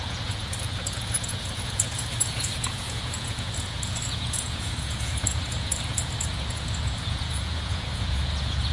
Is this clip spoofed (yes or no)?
yes